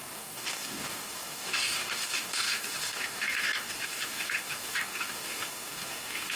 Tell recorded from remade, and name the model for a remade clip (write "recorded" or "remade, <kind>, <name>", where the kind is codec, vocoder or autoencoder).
remade, codec, DAC